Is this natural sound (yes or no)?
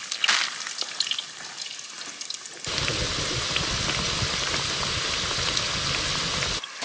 yes